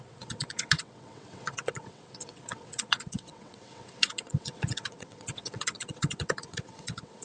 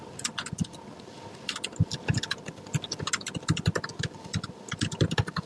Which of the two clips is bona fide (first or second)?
second